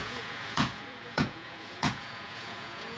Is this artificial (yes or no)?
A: yes